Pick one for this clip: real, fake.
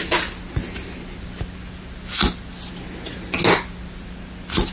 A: real